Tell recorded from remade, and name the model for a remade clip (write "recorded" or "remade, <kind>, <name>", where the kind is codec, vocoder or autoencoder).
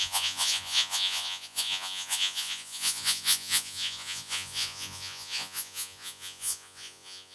remade, vocoder, Vocos